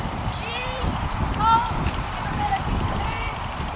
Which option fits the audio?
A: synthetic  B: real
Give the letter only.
A